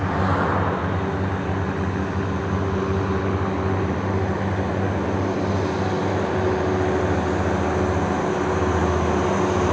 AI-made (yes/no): no